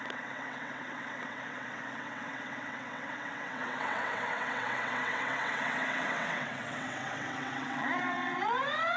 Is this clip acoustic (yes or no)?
no